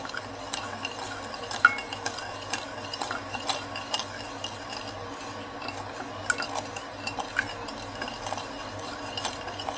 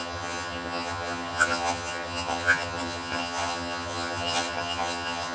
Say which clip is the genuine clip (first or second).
first